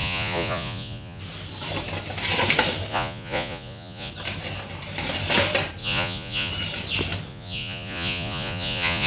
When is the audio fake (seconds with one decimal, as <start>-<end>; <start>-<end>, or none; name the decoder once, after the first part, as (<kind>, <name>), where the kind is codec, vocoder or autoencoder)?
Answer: 0.0-1.2 (vocoder, Vocos); 2.9-4.1; 5.8-6.5; 7.3-9.1